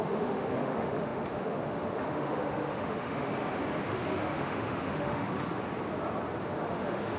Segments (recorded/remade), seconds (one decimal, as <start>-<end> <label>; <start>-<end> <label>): 0.0-3.3 remade; 3.3-3.8 recorded; 3.8-5.6 remade; 5.6-6.4 recorded; 6.4-7.2 remade